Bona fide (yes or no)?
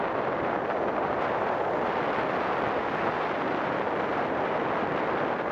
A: yes